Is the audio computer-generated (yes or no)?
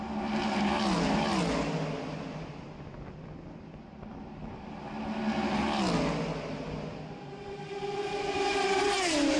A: no